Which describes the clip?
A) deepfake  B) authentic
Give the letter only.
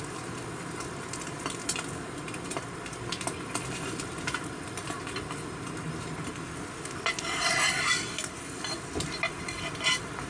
B